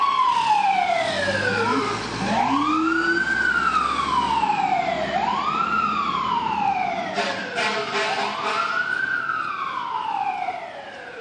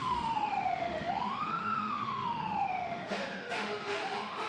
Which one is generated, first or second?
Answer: second